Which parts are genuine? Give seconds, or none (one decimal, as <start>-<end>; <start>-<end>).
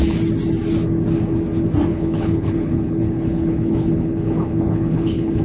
0.0-1.9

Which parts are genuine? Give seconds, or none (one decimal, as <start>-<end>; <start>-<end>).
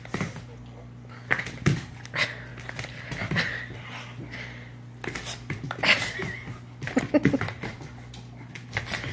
0.0-9.1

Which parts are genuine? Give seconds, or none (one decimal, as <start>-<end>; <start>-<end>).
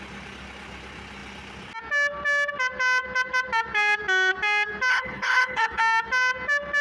0.0-4.9; 5.8-6.8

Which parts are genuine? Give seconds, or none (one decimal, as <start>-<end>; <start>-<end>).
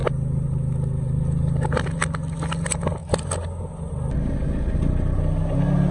0.0-5.9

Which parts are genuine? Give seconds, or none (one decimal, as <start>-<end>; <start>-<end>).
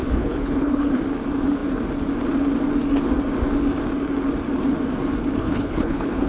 1.0-5.4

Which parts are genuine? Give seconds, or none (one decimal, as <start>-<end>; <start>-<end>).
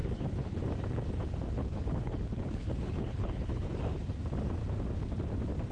0.6-1.6; 3.7-5.7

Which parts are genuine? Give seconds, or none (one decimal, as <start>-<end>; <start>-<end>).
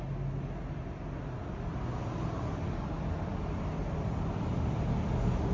0.0-5.5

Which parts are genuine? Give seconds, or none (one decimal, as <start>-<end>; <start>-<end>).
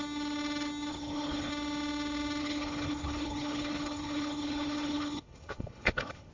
0.0-0.9; 1.5-2.4